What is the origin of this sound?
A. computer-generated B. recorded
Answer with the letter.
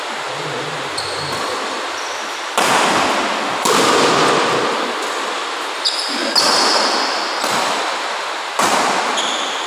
B